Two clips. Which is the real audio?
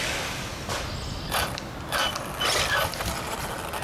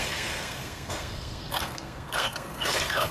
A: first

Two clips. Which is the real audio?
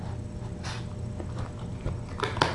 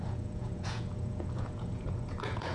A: first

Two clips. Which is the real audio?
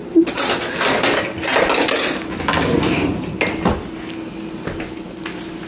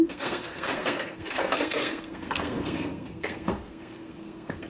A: first